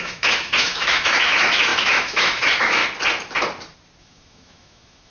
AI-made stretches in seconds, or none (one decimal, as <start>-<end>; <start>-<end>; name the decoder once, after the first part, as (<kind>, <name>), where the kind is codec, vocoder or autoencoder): 0.0-2.8 (autoencoder, DAC-VAE); 4.0-5.1